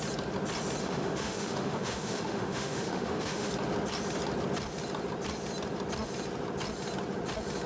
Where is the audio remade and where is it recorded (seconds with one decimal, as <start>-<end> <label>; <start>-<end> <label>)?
0.0-0.8 recorded; 0.8-3.5 remade; 3.5-7.7 recorded